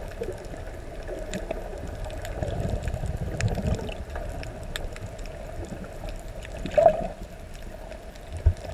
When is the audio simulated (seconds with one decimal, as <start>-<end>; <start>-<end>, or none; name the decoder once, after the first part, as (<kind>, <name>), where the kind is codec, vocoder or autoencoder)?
none